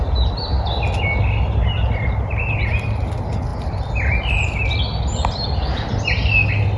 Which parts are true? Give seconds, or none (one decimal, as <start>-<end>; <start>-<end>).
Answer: 0.0-6.8